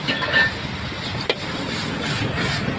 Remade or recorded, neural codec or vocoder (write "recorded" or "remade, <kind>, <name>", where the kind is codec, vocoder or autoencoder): recorded